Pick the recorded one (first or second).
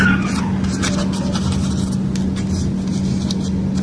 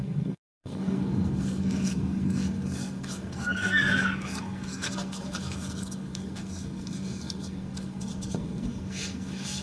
first